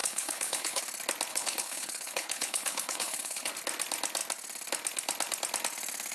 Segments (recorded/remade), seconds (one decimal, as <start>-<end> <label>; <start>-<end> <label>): 0.0-0.8 remade; 0.8-1.3 recorded; 1.3-3.5 remade; 3.5-6.1 recorded